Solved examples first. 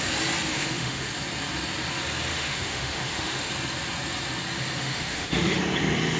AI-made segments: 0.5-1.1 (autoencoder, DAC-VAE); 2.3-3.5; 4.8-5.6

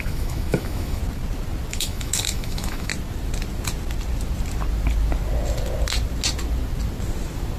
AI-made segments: 0.0-1.0 (autoencoder, DAC-VAE); 1.7-2.9

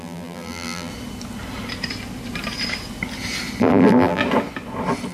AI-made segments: 0.0-0.9 (vocoder, BigVGAN v2); 3.6-4.2

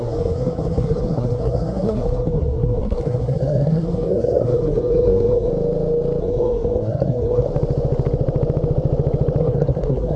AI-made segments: 0.0-5.5 (codec, SNAC); 6.2-7.5; 9.4-10.2

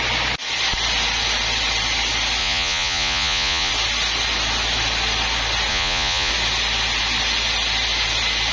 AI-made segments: 2.4-3.7 (vocoder, Vocos); 5.7-6.3

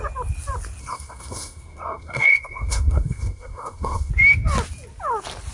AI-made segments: 0.8-4.1 (codec, SNAC)